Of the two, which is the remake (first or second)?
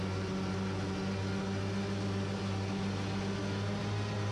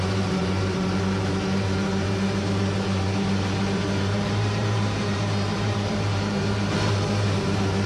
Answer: second